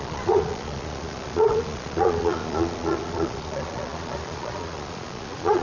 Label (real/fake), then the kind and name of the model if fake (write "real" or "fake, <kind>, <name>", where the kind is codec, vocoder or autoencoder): fake, vocoder, Vocos